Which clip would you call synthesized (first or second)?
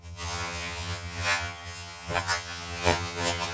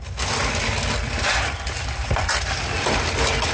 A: first